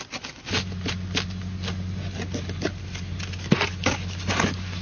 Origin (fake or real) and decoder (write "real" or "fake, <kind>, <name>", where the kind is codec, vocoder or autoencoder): real